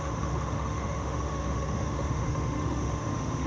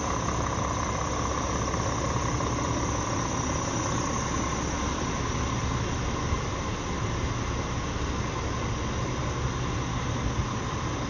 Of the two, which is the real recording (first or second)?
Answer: second